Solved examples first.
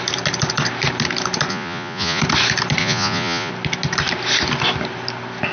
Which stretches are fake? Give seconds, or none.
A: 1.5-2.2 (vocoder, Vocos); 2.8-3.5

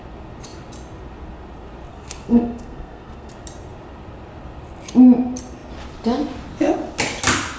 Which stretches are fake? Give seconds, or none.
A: 1.9-3.3 (codec, SNAC)

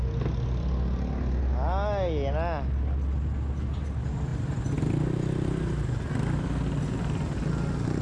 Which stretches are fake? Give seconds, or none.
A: none

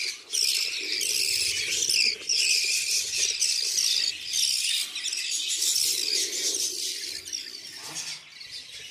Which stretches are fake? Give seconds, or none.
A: none

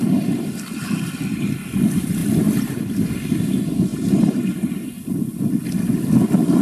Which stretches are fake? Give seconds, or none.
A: 2.2-2.9 (vocoder, BigVGAN v2); 3.9-5.1